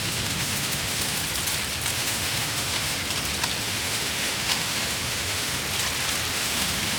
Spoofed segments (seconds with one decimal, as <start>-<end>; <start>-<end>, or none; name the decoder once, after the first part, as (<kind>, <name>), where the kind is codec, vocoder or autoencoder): 0.0-1.2 (autoencoder, DAC-VAE); 1.9-3.0; 3.6-5.6; 6.3-7.0